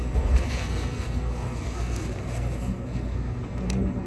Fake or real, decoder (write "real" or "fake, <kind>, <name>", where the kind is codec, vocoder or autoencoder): fake, codec, SNAC